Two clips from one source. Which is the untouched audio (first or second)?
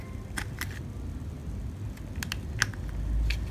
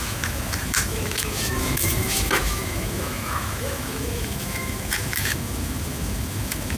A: first